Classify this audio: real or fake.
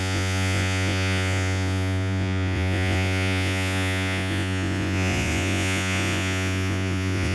fake